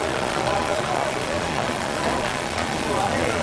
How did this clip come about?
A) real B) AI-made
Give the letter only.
B